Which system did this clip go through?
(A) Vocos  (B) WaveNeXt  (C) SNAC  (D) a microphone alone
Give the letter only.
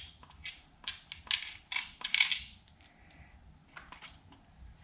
D